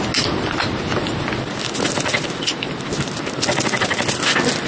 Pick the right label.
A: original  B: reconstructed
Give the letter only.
A